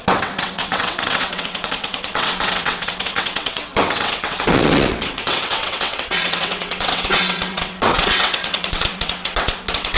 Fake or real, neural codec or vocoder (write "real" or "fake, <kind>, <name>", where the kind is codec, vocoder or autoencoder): fake, vocoder, WaveNeXt